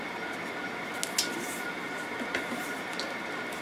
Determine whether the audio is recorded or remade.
recorded